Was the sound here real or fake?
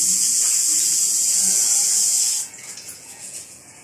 fake